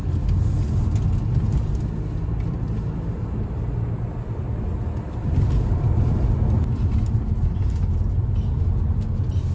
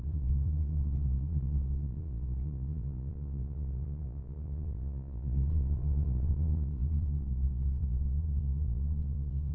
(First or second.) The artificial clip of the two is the second